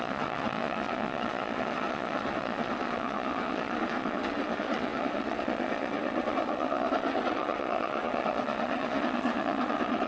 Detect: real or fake fake